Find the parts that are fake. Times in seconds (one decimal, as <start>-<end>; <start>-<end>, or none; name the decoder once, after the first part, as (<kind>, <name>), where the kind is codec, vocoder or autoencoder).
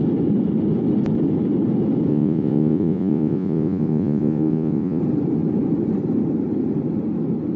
2.1-5.0 (vocoder, Vocos)